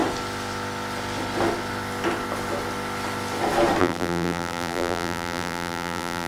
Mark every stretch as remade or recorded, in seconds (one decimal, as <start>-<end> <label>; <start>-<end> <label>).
0.0-3.8 recorded; 3.8-6.3 remade